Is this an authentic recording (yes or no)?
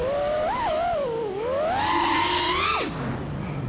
yes